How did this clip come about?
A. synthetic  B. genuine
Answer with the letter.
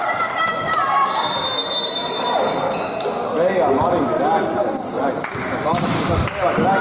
B